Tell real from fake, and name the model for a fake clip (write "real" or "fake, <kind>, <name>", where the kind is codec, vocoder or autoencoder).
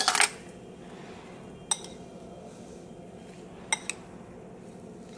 real